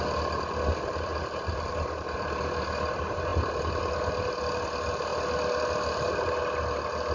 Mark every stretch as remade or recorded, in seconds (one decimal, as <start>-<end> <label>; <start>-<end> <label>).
0.0-7.1 recorded